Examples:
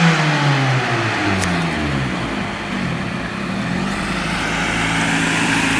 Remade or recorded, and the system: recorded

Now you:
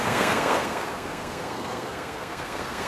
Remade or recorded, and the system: remade, codec, SNAC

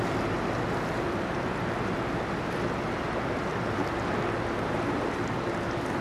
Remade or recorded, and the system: recorded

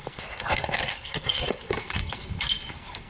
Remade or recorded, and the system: remade, codec, SNAC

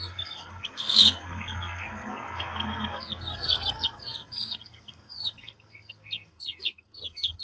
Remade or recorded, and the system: remade, codec, SNAC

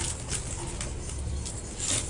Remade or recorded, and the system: recorded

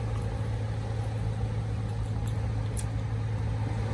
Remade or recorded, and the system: recorded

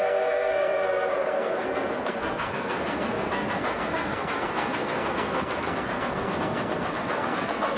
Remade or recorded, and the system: remade, codec, SNAC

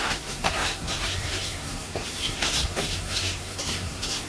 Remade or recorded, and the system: remade, codec, SNAC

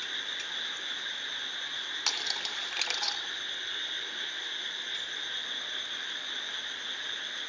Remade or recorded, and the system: recorded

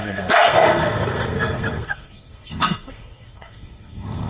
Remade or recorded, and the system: remade, codec, SNAC